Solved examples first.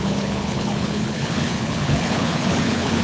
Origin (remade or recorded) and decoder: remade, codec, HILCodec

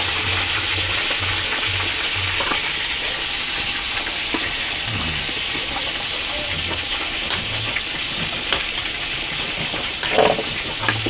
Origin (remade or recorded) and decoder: recorded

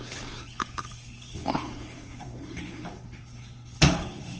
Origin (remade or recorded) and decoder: remade, codec, HILCodec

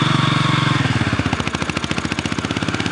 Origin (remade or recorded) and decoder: recorded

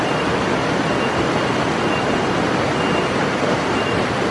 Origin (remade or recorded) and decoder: recorded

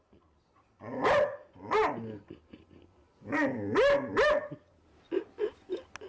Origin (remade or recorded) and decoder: recorded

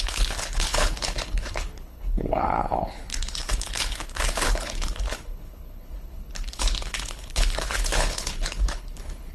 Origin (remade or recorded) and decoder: remade, codec, HILCodec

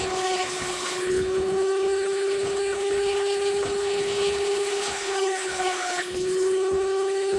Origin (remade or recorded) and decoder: remade, codec, HILCodec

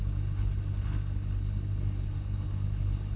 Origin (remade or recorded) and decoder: remade, codec, HILCodec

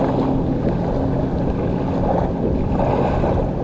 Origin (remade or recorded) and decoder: recorded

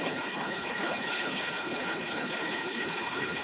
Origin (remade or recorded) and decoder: remade, codec, HILCodec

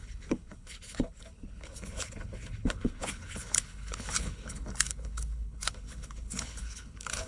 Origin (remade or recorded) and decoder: remade, codec, HILCodec